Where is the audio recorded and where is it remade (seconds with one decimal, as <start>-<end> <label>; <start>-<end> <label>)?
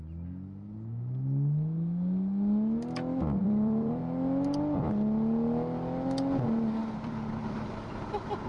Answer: 0.0-3.4 recorded; 3.4-4.0 remade; 4.0-6.8 recorded; 6.8-7.9 remade; 7.9-8.5 recorded